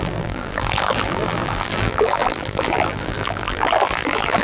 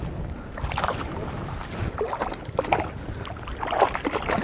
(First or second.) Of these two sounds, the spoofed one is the first